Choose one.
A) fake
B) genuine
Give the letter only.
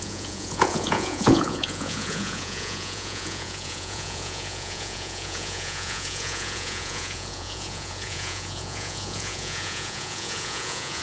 A